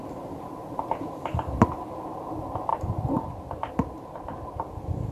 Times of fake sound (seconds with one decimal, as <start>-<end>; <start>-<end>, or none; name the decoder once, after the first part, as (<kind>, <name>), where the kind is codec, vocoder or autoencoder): none